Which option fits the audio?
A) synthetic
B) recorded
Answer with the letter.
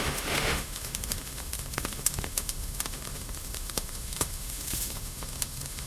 A